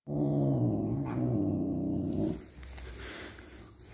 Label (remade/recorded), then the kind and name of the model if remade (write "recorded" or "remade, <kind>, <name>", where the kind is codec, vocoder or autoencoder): recorded